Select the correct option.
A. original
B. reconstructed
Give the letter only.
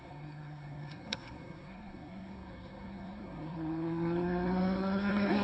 B